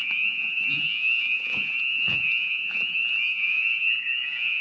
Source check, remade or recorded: remade